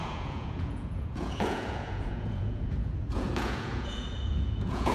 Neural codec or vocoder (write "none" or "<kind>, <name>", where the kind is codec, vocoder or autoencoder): vocoder, Vocos